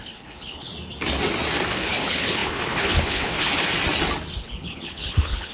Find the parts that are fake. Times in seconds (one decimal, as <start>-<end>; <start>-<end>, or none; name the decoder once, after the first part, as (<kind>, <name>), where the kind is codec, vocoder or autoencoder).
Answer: 0.0-0.7 (codec, HILCodec); 1.7-3.7; 4.4-5.5